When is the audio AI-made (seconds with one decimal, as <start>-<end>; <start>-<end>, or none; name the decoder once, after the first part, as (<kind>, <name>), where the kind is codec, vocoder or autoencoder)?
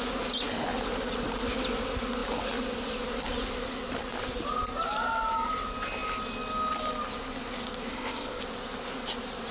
7.9-8.4 (codec, ZipCodec)